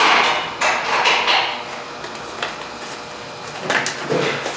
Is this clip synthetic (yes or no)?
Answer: no